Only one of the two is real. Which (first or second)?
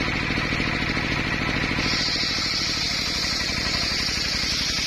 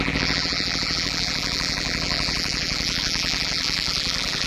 first